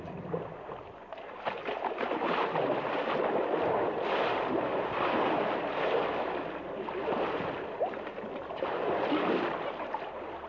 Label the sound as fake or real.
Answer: real